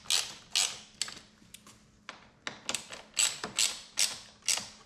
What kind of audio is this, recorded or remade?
recorded